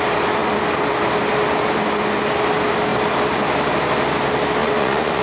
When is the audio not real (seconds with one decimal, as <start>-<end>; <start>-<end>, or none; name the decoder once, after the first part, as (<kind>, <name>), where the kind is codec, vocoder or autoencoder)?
4.6-5.2 (vocoder, Vocos)